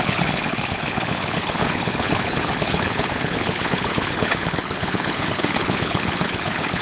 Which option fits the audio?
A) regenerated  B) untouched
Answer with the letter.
A